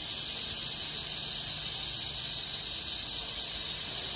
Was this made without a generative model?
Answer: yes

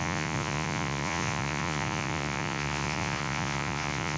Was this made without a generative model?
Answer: no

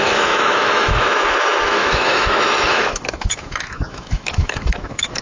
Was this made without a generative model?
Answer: no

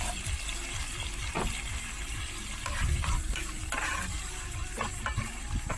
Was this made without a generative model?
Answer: yes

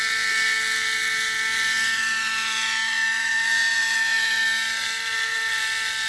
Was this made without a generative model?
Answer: no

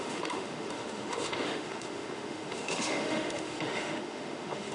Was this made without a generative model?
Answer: no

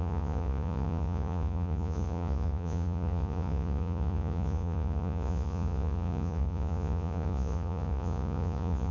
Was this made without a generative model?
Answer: no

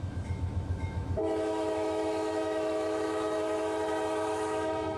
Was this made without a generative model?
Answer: no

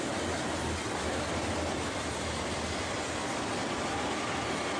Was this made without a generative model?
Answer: yes